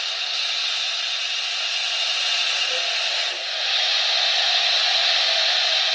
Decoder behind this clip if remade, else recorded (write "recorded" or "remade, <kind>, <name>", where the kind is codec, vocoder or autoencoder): recorded